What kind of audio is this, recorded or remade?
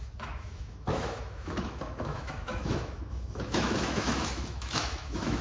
remade